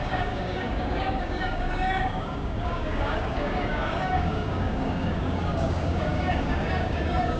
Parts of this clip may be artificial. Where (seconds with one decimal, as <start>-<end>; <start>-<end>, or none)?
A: 0.0-7.4